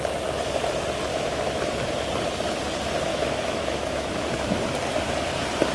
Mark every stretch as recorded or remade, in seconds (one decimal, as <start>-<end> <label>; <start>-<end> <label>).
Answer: 0.0-1.1 recorded; 1.1-1.7 remade; 1.7-3.1 recorded; 3.1-4.6 remade; 4.6-5.7 recorded